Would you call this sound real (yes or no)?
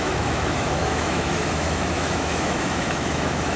no